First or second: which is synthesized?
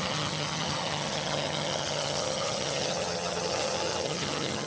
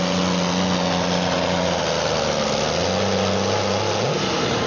first